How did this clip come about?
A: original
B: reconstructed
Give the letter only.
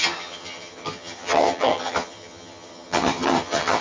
B